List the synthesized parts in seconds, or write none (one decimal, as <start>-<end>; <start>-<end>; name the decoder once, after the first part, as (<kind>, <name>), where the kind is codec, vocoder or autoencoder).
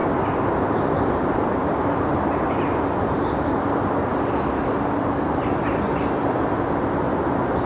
0.0-0.7 (vocoder, BigVGAN v2); 1.6-3.0; 4.1-6.3